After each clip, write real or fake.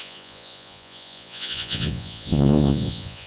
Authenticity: fake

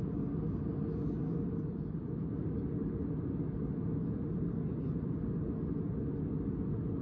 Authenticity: real